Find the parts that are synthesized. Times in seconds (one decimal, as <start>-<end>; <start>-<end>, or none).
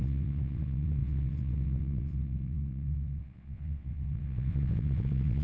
0.0-5.4